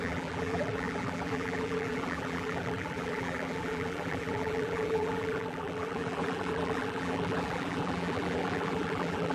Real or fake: fake